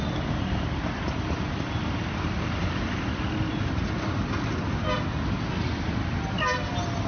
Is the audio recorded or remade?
recorded